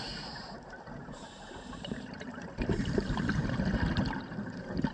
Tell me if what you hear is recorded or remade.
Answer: remade